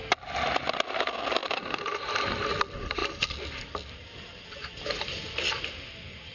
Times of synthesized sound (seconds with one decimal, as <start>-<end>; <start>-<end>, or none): 1.4-2.1; 3.0-5.5